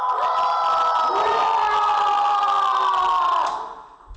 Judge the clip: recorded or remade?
recorded